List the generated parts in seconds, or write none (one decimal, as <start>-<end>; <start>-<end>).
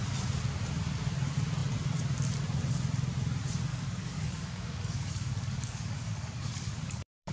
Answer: 3.7-7.3